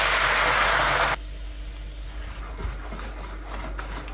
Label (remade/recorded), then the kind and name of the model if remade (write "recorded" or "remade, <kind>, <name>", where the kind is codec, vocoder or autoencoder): recorded